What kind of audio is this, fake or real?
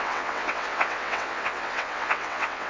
fake